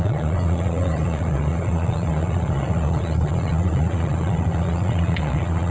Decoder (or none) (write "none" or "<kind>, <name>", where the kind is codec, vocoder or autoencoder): vocoder, Vocos